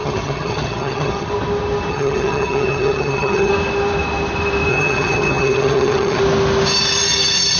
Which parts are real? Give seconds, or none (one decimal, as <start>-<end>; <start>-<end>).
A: 1.3-1.9; 3.5-4.7; 6.2-7.6